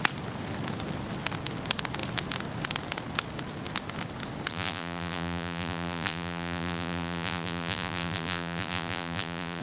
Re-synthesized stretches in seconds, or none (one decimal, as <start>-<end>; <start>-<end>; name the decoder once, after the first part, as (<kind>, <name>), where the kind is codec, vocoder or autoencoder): 4.5-9.6 (vocoder, BigVGAN v2)